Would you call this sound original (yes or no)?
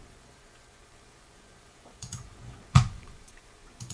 no